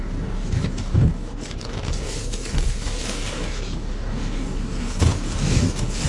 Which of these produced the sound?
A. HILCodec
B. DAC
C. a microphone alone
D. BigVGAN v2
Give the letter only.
B